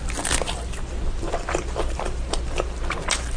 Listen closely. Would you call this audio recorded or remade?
recorded